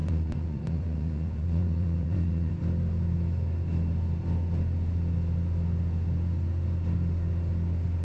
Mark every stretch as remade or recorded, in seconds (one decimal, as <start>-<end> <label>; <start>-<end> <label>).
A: 0.0-2.5 remade; 2.5-8.0 recorded